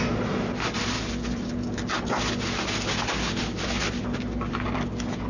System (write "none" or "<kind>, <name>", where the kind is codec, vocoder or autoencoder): none